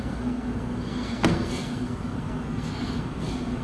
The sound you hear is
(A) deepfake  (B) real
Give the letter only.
A